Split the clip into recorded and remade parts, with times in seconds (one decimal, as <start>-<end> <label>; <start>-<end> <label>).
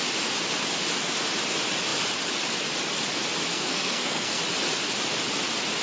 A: 0.0-3.5 recorded; 3.5-4.4 remade; 4.4-5.8 recorded